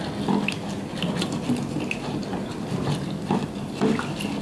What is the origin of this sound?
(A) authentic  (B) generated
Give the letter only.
A